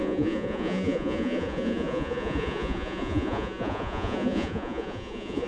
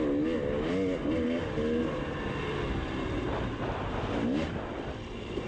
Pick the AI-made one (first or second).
first